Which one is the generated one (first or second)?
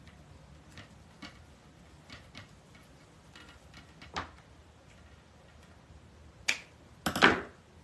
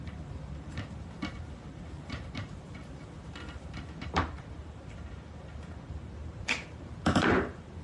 second